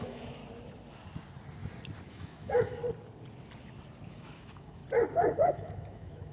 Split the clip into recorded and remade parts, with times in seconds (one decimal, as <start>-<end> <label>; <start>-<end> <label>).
0.0-0.4 remade; 0.4-2.1 recorded; 2.1-2.8 remade; 2.8-4.1 recorded; 4.1-4.8 remade; 4.8-5.5 recorded; 5.5-6.3 remade